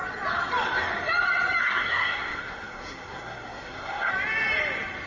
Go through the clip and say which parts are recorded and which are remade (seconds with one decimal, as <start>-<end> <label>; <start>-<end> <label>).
0.0-1.6 recorded; 1.6-4.1 remade; 4.1-5.1 recorded